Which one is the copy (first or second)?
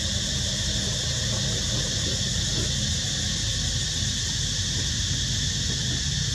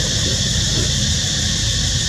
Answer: second